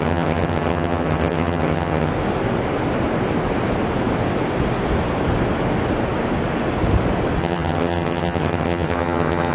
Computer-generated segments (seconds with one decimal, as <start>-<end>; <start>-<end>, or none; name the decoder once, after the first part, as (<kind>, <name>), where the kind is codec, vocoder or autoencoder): 0.0-2.1 (vocoder, HiFi-GAN); 7.4-9.5